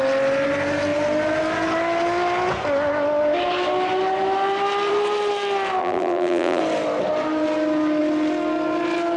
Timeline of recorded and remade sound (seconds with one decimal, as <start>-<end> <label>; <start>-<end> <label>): 0.0-5.8 recorded; 5.8-6.6 remade; 6.6-9.2 recorded